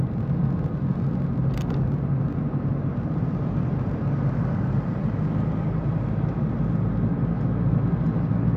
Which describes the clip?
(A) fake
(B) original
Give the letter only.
B